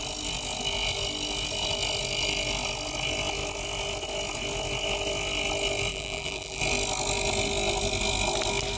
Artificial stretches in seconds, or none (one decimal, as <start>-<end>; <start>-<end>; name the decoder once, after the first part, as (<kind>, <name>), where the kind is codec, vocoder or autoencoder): 5.9-6.6 (vocoder, BigVGAN v2)